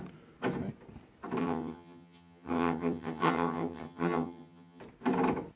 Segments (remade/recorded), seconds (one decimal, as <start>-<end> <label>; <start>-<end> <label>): 0.0-1.4 recorded; 1.4-4.8 remade; 4.8-5.6 recorded